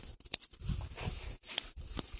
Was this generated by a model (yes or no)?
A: no